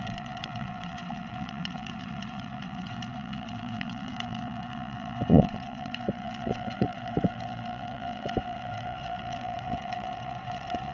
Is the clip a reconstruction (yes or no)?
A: yes